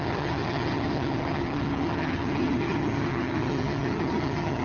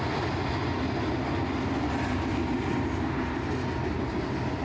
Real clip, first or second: second